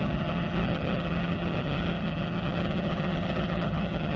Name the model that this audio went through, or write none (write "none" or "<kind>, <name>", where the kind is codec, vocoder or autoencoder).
vocoder, HiFi-GAN